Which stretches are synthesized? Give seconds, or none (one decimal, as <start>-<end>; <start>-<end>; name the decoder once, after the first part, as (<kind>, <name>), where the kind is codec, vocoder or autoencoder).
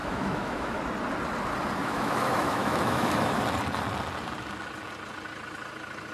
0.0-0.8 (autoencoder, DAC-VAE); 1.8-3.4